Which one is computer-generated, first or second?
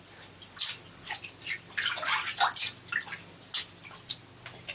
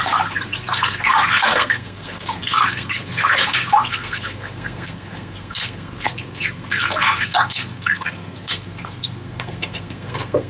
second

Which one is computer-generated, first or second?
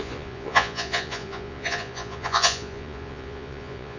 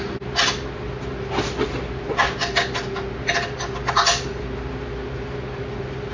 first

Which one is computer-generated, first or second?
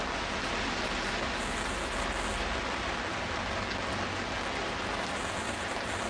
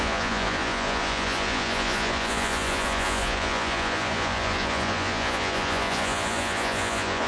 second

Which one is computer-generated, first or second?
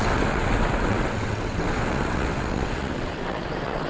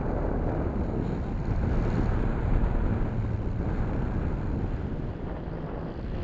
first